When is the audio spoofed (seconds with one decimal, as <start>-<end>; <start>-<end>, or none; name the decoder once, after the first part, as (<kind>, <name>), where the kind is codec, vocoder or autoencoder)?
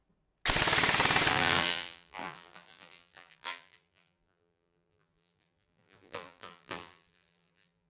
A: 1.3-7.9 (vocoder, BigVGAN v2)